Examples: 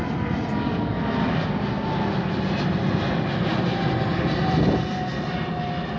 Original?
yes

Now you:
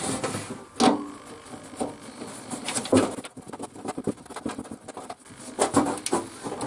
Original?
yes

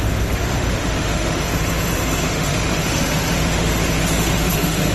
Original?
no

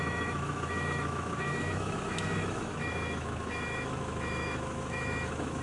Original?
no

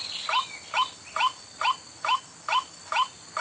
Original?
yes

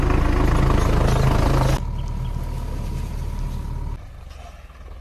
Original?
yes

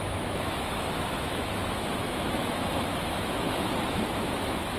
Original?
no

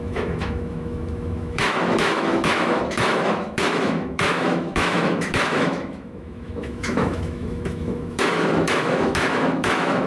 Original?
no